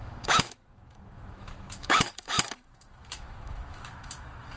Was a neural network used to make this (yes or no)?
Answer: yes